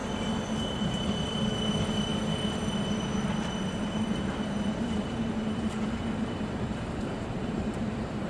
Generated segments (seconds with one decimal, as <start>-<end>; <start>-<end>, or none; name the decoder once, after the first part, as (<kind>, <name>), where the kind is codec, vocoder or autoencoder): 0.6-2.1 (vocoder, BigVGAN v2); 3.8-8.3